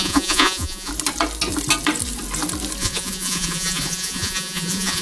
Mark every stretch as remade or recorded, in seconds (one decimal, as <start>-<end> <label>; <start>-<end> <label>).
0.0-0.9 remade; 0.9-2.8 recorded; 2.8-5.0 remade